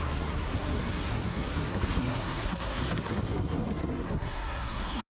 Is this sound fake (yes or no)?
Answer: yes